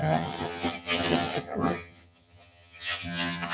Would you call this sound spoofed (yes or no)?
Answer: yes